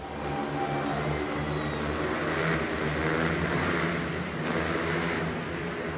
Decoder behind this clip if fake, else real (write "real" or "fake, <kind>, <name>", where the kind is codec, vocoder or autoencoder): real